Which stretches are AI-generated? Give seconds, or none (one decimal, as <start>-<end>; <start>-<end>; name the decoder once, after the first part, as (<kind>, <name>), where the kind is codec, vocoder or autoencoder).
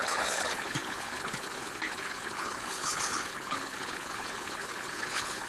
0.0-5.5 (codec, HILCodec)